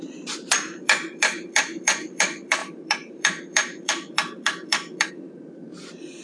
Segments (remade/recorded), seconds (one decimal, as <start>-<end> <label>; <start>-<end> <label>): 0.0-6.2 remade